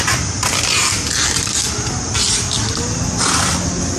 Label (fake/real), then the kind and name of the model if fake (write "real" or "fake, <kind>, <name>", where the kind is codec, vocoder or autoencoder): real